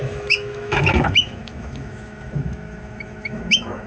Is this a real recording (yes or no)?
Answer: no